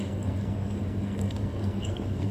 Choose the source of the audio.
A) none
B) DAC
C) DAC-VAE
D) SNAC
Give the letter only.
D